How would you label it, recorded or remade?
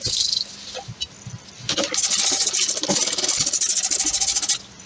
recorded